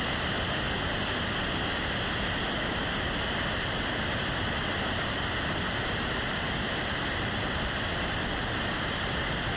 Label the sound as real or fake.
real